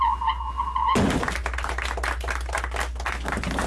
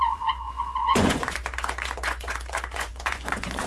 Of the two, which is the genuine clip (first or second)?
first